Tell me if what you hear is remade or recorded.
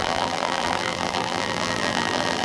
remade